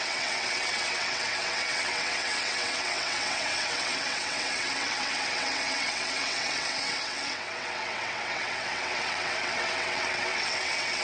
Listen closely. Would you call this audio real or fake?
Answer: fake